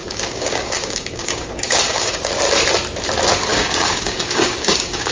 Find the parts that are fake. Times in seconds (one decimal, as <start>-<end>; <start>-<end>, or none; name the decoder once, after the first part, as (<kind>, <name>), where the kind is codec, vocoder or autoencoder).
0.0-2.3 (codec, DAC); 3.5-5.1